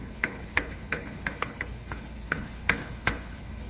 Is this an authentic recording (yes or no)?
no